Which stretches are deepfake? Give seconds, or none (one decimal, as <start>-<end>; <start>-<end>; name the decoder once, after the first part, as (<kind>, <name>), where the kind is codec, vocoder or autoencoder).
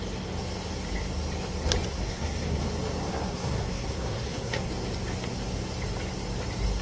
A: 1.9-2.6 (codec, SNAC); 3.1-4.7